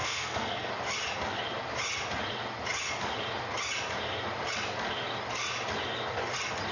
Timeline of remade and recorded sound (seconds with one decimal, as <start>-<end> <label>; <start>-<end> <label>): 0.0-0.7 remade; 0.7-6.7 recorded

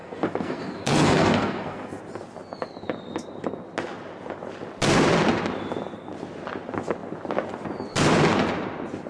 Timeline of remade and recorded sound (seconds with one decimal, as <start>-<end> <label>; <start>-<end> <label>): 0.0-2.0 remade; 2.0-9.1 recorded

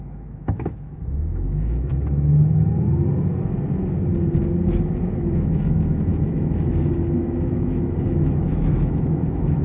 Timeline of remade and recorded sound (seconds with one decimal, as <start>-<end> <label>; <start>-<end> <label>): 0.0-1.9 remade; 1.9-5.0 recorded; 5.0-9.6 remade

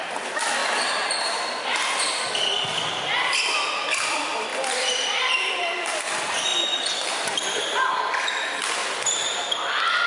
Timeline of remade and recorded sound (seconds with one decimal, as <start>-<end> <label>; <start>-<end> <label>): 0.0-0.6 remade; 0.6-1.4 recorded; 1.4-8.8 remade; 8.8-9.5 recorded; 9.5-10.1 remade

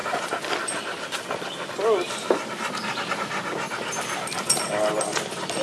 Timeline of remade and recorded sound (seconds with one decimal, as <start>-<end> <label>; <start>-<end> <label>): 0.0-5.6 recorded

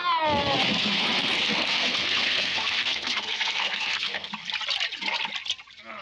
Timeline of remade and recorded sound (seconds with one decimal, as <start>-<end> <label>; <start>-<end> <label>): 0.0-0.7 recorded; 0.7-4.3 remade; 4.3-6.0 recorded

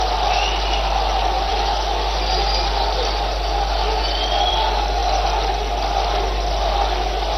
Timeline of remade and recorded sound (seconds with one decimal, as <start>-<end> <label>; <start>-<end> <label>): 0.0-7.4 recorded

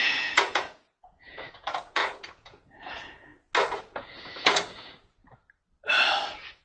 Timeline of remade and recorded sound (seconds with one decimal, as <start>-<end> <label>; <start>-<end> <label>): 0.0-3.3 remade; 3.3-3.8 recorded; 3.8-5.2 remade; 5.2-6.6 recorded